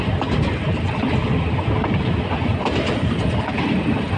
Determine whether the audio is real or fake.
real